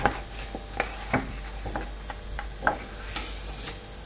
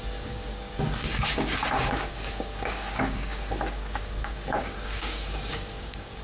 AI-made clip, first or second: second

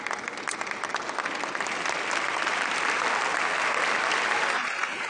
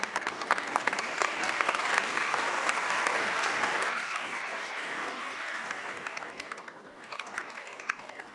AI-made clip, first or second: second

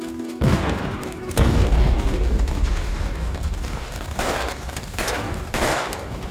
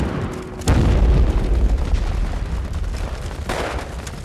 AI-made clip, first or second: first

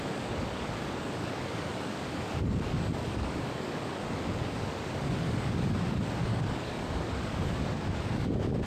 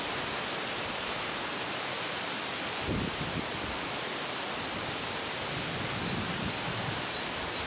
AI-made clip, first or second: first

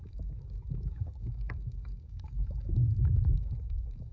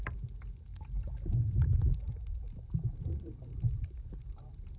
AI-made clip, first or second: first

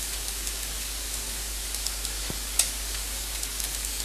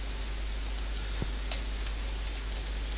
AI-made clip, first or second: first